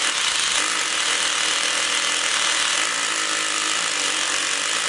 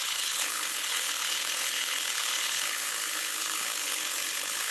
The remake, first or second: second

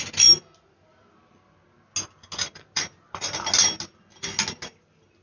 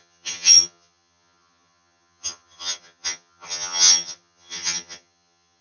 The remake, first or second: second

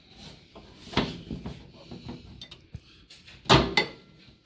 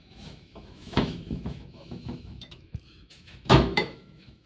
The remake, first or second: second